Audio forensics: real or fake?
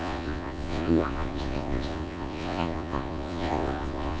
fake